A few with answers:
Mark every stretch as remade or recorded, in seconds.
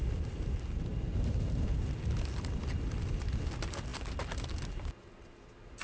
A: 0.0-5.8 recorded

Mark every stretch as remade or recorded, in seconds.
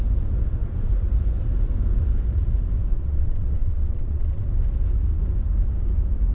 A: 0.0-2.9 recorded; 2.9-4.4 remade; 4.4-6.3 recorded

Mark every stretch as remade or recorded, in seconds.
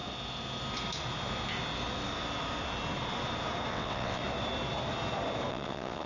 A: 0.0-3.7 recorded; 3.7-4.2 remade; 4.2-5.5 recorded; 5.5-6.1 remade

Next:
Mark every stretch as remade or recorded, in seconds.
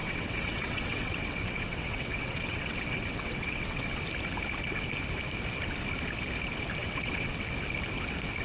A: 0.0-4.0 remade; 4.0-6.8 recorded; 6.8-7.3 remade; 7.3-8.4 recorded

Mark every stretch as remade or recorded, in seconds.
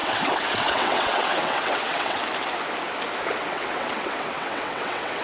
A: 0.0-2.2 remade; 2.2-3.4 recorded; 3.4-5.2 remade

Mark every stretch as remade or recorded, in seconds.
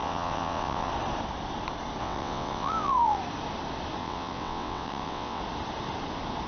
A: 0.0-0.9 remade; 0.9-2.0 recorded; 2.0-3.2 remade; 3.2-4.0 recorded; 4.0-5.4 remade; 5.4-6.5 recorded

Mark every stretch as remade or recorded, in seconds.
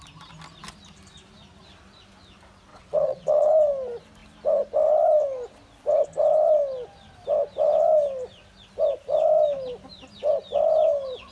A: 0.0-2.7 recorded; 2.7-3.5 remade; 3.5-11.3 recorded